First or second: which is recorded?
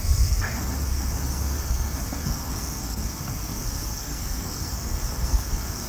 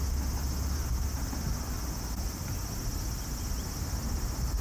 second